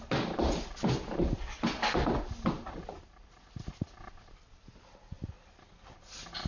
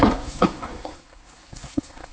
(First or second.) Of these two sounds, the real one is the first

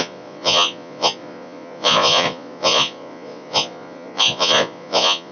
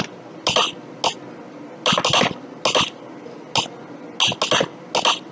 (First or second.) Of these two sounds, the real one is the second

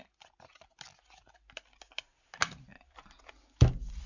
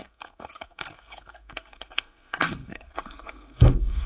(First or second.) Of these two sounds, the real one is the first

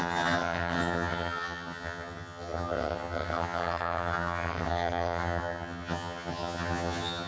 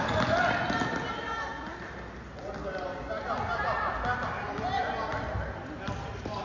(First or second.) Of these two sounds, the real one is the second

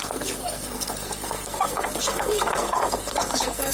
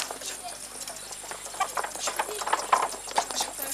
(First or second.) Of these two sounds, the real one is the second